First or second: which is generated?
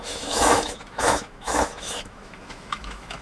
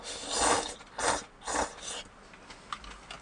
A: first